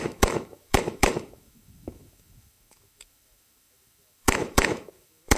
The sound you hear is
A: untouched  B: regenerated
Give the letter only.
B